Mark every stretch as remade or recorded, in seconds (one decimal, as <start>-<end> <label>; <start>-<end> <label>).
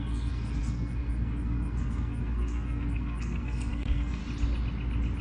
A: 0.0-4.2 remade; 4.2-5.2 recorded